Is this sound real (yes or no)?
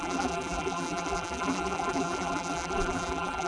no